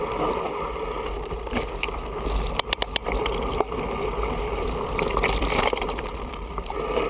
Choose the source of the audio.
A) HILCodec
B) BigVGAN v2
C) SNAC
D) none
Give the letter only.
D